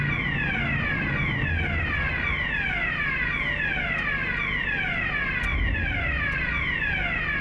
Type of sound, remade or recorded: recorded